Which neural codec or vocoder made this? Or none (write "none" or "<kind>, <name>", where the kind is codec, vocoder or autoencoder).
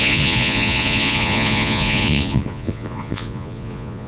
vocoder, Vocos